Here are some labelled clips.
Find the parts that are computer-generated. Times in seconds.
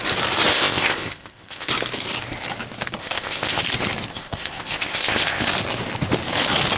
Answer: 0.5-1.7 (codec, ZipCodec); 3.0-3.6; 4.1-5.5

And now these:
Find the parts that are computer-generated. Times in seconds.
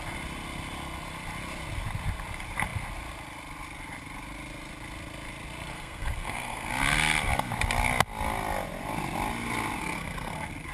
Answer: 5.7-6.7 (codec, SNAC); 9.8-10.7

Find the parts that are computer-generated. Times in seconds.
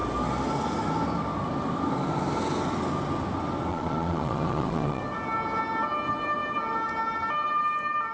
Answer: 3.7-5.0 (vocoder, Vocos)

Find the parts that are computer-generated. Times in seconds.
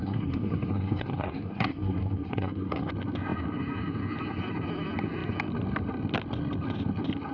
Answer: 0.0-2.9 (codec, SNAC)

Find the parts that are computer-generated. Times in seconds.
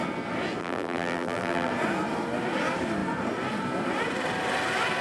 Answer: 0.6-1.7 (vocoder, BigVGAN v2)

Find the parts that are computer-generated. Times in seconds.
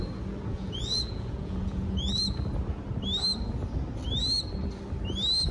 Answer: 0.5-2.1 (vocoder, Vocos)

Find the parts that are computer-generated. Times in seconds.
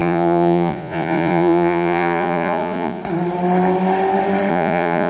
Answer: 0.0-3.0 (vocoder, Vocos); 4.5-5.1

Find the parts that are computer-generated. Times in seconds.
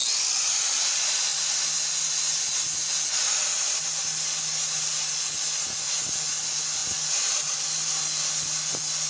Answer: none